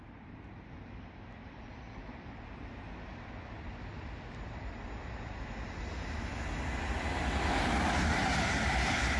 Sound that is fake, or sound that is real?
real